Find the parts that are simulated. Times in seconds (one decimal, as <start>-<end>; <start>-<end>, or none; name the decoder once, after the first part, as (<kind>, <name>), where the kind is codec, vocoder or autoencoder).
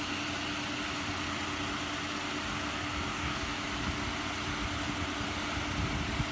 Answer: 3.1-3.6 (codec, DAC)